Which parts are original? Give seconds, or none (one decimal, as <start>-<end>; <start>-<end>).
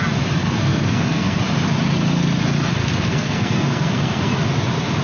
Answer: 0.0-0.4; 1.4-2.8; 4.3-5.0